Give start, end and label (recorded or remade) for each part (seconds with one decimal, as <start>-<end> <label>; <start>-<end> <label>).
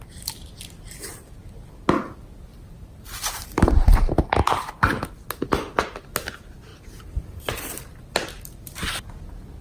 0.0-2.5 recorded; 2.5-4.8 remade; 4.8-6.7 recorded; 6.7-7.8 remade; 7.8-9.6 recorded